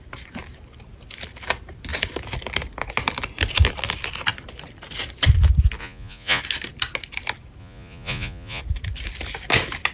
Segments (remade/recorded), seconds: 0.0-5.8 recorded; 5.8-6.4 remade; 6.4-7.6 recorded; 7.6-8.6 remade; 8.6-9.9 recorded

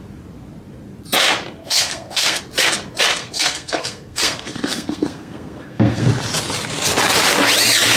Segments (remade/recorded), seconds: 0.0-1.6 recorded; 1.6-2.4 remade; 2.4-3.2 recorded; 3.2-6.1 remade; 6.1-8.0 recorded

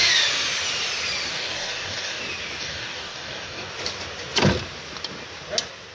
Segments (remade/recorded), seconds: 0.0-1.3 recorded; 1.3-2.2 remade; 2.2-2.6 recorded; 2.6-3.7 remade; 3.7-5.9 recorded

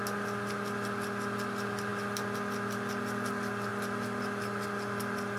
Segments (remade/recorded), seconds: 0.0-5.4 recorded

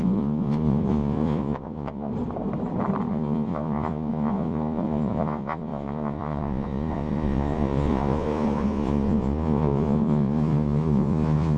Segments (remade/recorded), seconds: 0.0-2.1 remade; 2.1-3.1 recorded; 3.1-11.6 remade

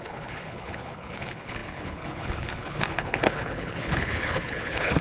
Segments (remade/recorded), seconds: 0.0-5.0 remade